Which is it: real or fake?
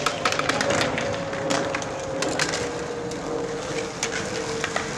real